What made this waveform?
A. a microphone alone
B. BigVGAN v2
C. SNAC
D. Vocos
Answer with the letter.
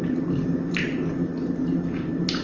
A